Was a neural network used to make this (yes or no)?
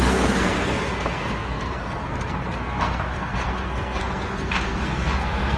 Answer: yes